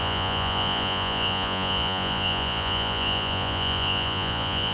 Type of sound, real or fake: fake